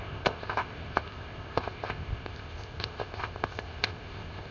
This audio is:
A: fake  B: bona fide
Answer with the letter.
A